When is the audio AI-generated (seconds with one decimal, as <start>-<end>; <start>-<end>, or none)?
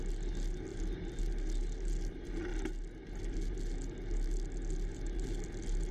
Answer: 0.7-1.2